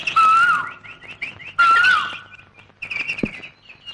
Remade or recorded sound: recorded